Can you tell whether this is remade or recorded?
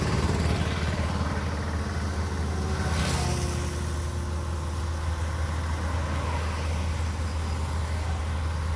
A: recorded